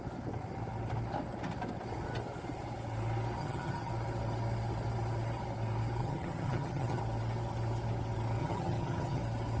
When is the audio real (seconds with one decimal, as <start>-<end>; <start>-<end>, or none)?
0.0-3.4; 3.9-6.0; 7.0-8.4; 9.2-9.6